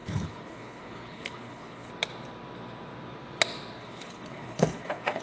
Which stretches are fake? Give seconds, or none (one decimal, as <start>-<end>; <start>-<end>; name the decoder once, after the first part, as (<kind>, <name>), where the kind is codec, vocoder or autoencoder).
0.0-1.9 (codec, HILCodec); 3.8-5.2